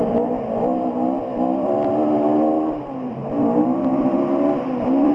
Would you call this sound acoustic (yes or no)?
no